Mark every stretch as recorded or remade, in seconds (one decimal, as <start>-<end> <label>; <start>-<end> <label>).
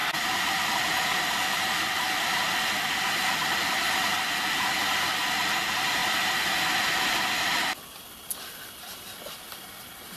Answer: 0.0-10.2 recorded